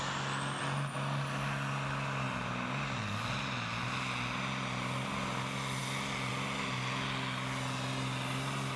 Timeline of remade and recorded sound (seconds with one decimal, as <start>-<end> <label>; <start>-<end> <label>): 0.0-8.8 recorded